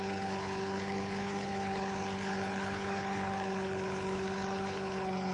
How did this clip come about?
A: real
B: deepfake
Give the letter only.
B